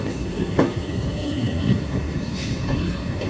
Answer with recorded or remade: remade